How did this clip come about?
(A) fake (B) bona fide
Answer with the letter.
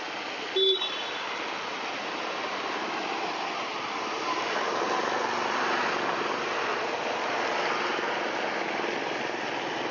B